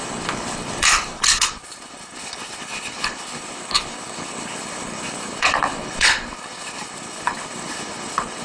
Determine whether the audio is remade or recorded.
remade